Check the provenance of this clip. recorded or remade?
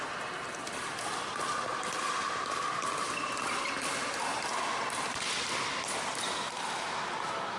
recorded